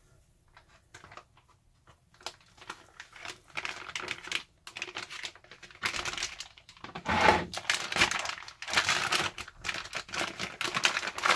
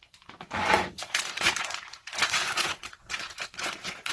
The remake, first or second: second